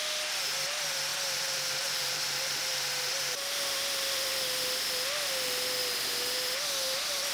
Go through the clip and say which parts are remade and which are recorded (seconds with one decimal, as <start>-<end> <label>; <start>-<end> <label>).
0.0-1.1 recorded; 1.1-4.3 remade; 4.3-7.3 recorded